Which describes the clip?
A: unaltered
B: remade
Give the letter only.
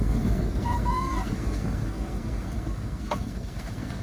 B